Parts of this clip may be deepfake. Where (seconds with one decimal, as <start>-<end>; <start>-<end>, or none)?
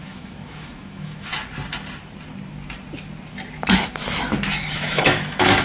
0.0-1.3; 4.7-5.6